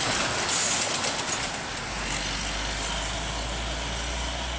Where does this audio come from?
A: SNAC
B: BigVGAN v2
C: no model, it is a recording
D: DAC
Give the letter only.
C